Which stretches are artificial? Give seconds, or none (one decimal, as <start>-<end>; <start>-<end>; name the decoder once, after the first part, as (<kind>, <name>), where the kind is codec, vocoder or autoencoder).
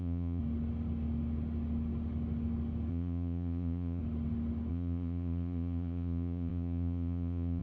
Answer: 0.0-0.4 (vocoder, Vocos); 2.9-4.0; 4.7-7.6